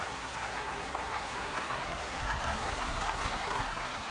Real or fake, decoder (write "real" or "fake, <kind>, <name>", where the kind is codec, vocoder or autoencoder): fake, codec, SNAC